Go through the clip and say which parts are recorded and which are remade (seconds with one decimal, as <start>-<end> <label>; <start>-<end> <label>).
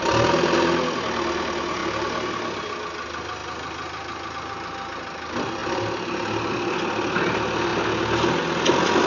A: 0.0-9.1 recorded